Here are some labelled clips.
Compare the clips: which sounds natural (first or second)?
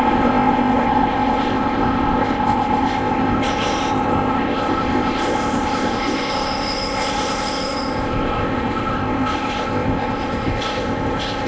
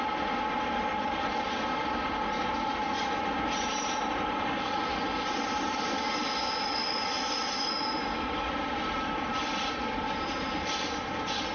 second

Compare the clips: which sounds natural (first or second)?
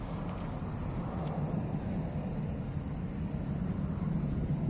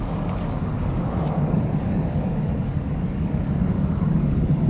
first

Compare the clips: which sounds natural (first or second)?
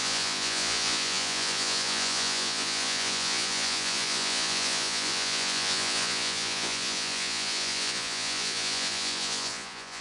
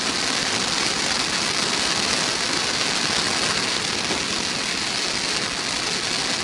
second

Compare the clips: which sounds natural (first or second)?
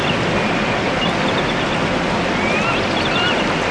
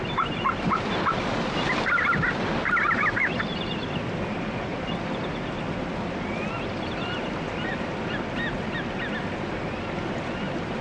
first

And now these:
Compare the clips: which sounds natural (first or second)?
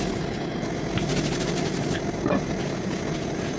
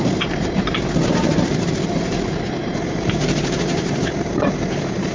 first